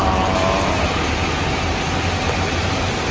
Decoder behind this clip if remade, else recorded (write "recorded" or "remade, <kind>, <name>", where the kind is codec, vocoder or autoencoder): recorded